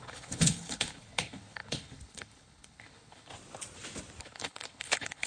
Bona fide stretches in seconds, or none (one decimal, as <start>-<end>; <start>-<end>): 3.3-4.2

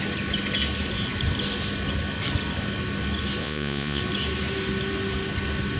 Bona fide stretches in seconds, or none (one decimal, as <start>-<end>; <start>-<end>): 0.0-3.4; 4.0-5.8

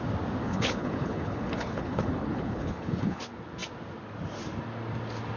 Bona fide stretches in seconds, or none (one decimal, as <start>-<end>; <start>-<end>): 0.0-0.4; 3.2-5.4

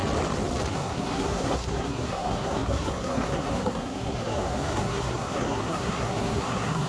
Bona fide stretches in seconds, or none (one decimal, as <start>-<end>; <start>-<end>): 0.0-0.7